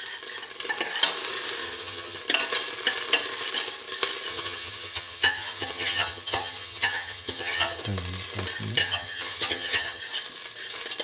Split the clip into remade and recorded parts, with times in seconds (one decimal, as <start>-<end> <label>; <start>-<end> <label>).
0.0-1.6 recorded; 1.6-2.2 remade; 2.2-4.3 recorded; 4.3-7.8 remade; 7.8-8.8 recorded; 8.8-10.0 remade; 10.0-11.0 recorded